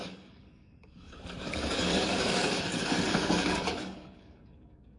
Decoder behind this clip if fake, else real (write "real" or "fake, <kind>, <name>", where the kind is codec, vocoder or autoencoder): fake, codec, DAC